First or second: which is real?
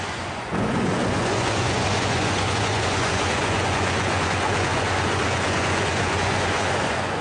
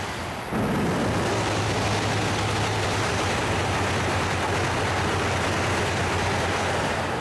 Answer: second